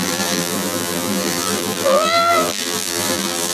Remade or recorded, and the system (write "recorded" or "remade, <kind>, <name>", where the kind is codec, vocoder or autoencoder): remade, vocoder, BigVGAN v2